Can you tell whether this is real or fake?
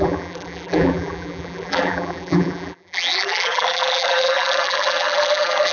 fake